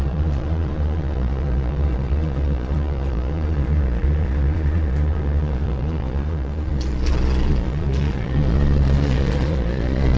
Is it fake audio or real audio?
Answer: fake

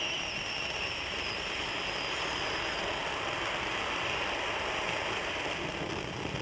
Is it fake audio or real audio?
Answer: real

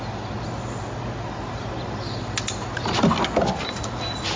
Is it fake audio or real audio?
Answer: real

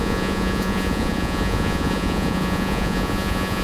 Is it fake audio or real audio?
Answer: fake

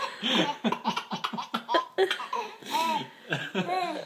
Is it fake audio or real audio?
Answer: real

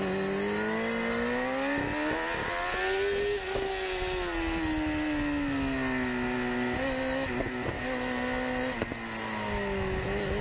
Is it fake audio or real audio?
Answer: real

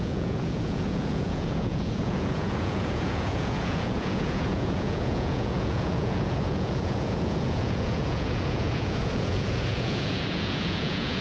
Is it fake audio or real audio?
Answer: fake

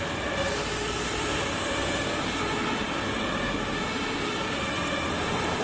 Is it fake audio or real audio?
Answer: real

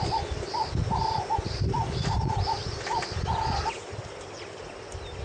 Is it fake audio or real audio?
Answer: real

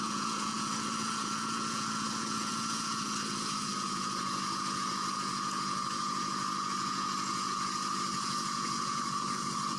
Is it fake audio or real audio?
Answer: fake